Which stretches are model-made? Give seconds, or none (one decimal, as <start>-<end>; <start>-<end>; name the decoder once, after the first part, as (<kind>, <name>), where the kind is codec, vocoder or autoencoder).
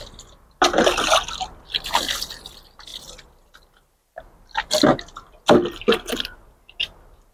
none